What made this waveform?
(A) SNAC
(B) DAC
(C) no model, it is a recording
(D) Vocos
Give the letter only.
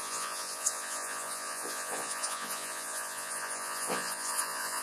D